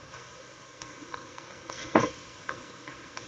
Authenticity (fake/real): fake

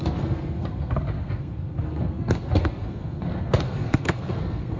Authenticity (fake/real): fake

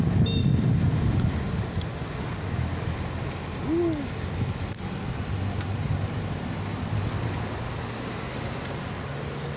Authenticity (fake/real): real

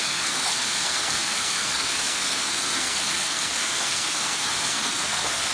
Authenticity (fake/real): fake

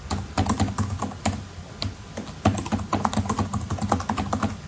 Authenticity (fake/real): real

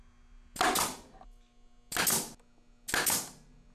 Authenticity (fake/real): real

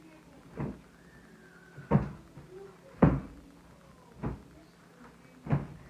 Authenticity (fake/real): real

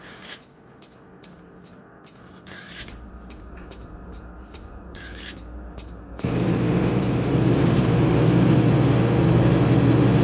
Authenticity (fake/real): real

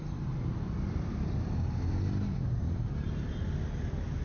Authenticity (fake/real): real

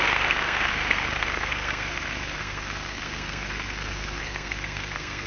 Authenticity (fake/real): fake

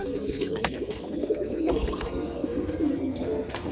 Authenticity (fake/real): fake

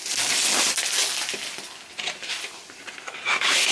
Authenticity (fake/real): real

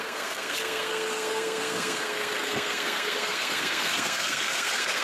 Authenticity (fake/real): fake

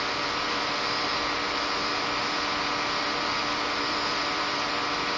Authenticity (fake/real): real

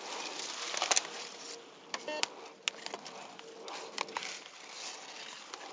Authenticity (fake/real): real